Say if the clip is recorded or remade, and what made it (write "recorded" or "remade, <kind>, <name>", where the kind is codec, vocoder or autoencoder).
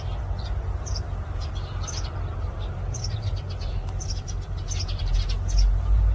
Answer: recorded